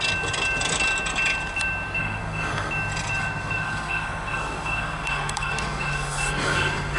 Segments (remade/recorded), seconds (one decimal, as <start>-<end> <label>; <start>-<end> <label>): 0.0-2.0 recorded; 2.0-2.7 remade; 2.7-3.2 recorded; 3.2-7.0 remade